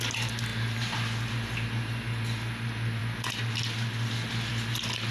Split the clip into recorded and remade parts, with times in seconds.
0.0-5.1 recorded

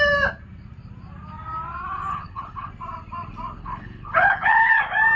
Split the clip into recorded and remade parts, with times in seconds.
0.0-2.1 recorded; 2.1-2.7 remade; 2.7-3.6 recorded; 3.6-4.8 remade; 4.8-5.2 recorded

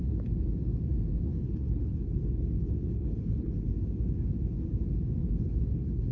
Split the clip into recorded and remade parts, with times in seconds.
0.0-1.3 recorded; 1.3-3.7 remade; 3.7-5.2 recorded; 5.2-6.1 remade